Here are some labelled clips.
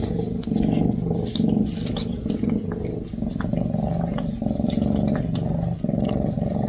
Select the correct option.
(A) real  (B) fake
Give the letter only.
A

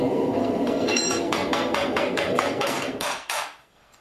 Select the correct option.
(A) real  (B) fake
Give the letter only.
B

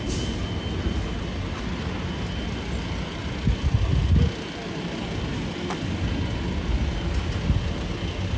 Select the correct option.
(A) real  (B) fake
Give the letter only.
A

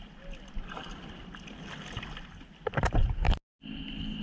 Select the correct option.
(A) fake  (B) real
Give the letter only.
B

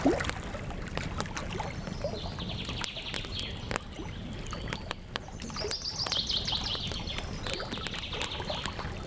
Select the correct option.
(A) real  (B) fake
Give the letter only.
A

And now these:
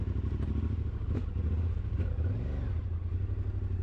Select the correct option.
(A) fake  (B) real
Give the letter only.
B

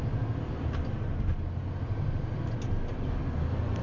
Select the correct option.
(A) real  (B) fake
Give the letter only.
A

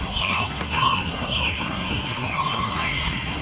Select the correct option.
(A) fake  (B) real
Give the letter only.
A